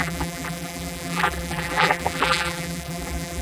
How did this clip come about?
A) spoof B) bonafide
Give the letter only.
A